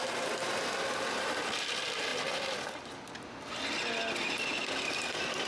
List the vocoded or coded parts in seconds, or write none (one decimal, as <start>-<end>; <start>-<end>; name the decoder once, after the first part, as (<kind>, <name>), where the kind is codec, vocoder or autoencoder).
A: none